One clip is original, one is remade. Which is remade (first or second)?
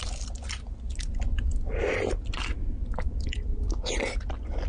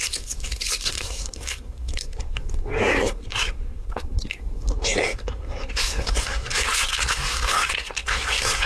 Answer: second